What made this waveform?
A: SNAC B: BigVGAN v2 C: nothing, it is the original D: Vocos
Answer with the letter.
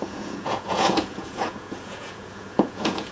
D